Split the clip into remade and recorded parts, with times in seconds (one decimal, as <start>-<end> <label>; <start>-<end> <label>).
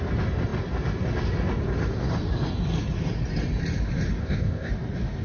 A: 0.0-4.2 recorded; 4.2-4.7 remade; 4.7-5.2 recorded